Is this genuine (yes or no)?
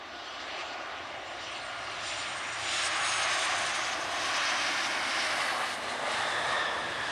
yes